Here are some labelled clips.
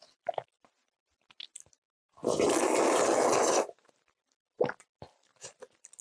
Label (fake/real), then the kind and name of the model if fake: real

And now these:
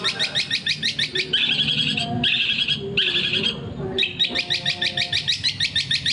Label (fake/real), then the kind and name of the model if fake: real